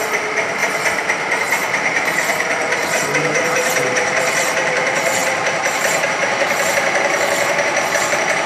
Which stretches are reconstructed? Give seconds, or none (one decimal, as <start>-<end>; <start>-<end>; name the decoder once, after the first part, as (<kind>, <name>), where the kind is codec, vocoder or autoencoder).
0.0-0.6 (vocoder, BigVGAN v2); 1.4-8.5